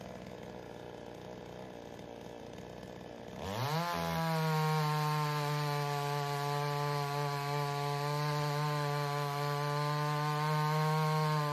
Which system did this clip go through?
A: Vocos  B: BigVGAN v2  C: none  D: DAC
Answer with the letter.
C